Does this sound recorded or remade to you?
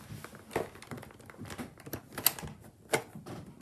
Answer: recorded